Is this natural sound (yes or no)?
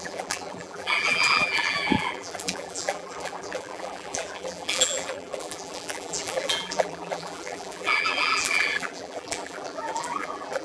no